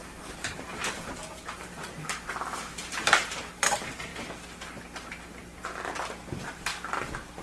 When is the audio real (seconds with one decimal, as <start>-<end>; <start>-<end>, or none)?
1.8-2.9; 4.1-6.3; 6.7-7.4